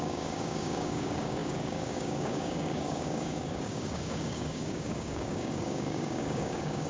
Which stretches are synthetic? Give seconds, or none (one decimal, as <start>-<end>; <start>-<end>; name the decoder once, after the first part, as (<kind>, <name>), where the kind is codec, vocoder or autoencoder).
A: 0.0-6.9 (codec, DAC)